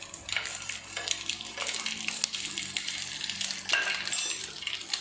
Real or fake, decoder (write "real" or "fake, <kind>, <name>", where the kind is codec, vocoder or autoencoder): real